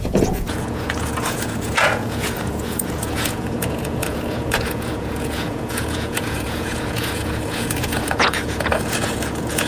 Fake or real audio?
fake